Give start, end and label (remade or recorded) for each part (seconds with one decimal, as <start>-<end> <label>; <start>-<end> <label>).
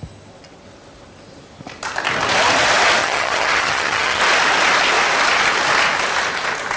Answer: 0.0-3.0 recorded; 3.0-4.2 remade; 4.2-6.8 recorded